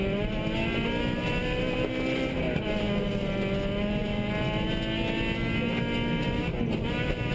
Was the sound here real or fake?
real